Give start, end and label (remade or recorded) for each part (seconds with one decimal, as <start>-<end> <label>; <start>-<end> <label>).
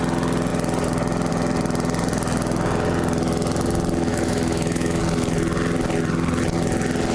0.0-4.1 recorded; 4.1-5.0 remade; 5.0-7.1 recorded